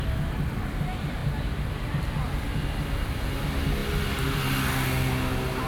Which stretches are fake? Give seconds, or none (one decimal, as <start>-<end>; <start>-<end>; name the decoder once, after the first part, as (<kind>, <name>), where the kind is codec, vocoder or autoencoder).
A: 1.2-2.5 (vocoder, BigVGAN v2)